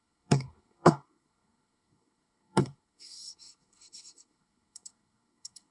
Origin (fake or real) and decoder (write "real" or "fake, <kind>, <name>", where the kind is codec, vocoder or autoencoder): fake, codec, SNAC